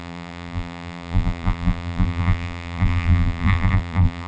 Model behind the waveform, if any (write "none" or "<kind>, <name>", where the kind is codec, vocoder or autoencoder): vocoder, BigVGAN v2